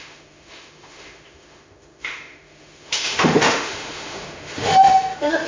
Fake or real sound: fake